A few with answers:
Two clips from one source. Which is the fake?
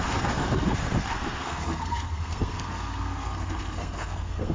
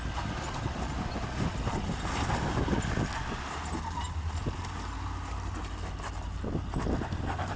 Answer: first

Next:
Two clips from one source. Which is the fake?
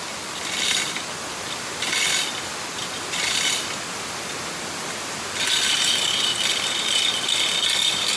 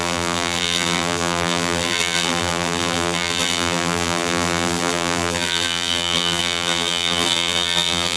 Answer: second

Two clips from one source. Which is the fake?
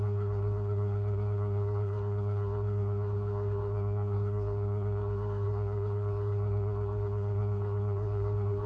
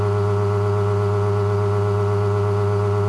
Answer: first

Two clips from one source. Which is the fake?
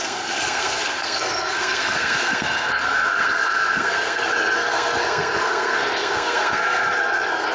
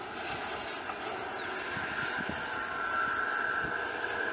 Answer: first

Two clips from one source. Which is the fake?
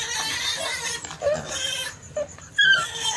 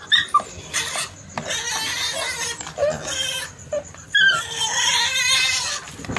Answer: first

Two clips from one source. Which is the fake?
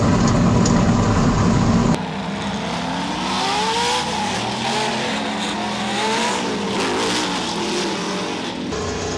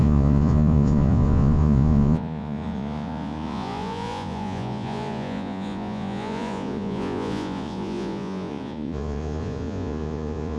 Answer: second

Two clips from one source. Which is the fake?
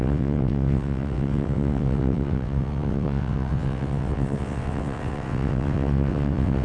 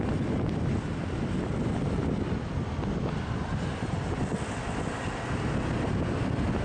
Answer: first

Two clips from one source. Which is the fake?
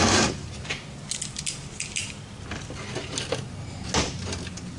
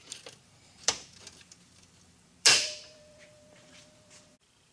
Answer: second